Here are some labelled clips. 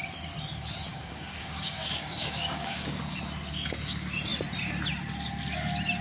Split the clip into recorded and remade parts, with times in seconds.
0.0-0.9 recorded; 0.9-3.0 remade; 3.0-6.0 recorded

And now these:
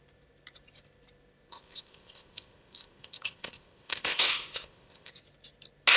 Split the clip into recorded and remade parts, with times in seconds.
0.0-1.5 recorded; 1.5-5.1 remade; 5.1-6.0 recorded

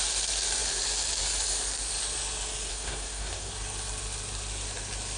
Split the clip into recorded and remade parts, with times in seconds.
0.0-2.7 recorded; 2.7-3.5 remade; 3.5-5.2 recorded

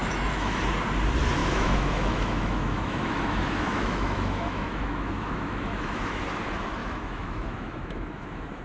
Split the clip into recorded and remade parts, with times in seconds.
0.0-0.6 remade; 0.6-1.4 recorded; 1.4-6.2 remade; 6.2-6.8 recorded; 6.8-8.6 remade

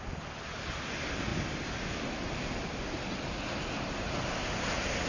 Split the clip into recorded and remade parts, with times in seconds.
0.0-5.1 recorded

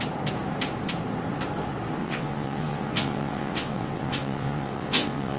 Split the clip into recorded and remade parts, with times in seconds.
0.0-2.0 recorded; 2.0-5.4 remade

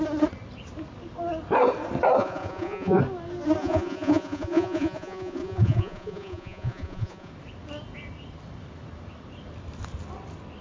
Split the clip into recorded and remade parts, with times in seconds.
0.0-2.2 recorded; 2.2-3.0 remade; 3.0-3.6 recorded; 3.6-7.3 remade; 7.3-10.6 recorded

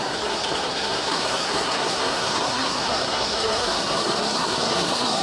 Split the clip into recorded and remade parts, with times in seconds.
0.0-5.2 remade